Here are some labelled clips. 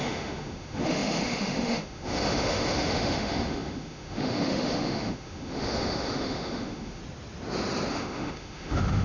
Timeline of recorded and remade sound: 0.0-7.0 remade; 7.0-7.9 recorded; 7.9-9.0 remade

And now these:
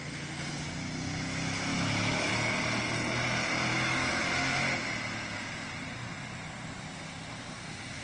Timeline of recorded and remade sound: 0.0-1.7 recorded; 1.7-2.3 remade; 2.3-3.7 recorded; 3.7-4.3 remade; 4.3-8.0 recorded

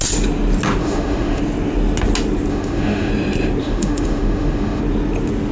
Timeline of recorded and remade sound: 0.0-0.8 recorded; 0.8-1.4 remade; 1.4-2.5 recorded; 2.5-3.1 remade; 3.1-3.6 recorded; 3.6-4.8 remade; 4.8-5.5 recorded

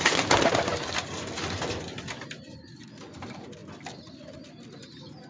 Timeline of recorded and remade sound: 0.0-5.3 recorded

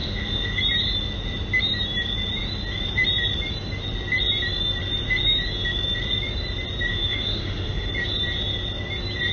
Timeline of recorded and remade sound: 0.0-0.6 remade; 0.6-6.9 recorded; 6.9-7.9 remade; 7.9-9.3 recorded

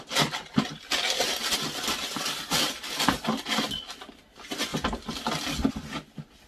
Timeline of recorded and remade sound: 0.0-6.5 recorded

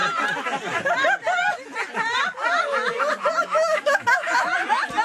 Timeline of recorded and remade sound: 0.0-3.4 recorded; 3.4-4.5 remade; 4.5-5.0 recorded